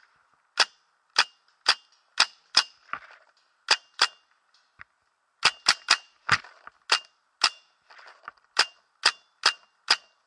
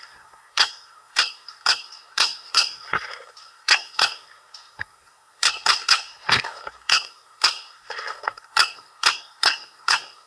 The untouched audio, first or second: first